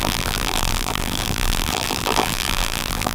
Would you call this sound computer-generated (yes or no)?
yes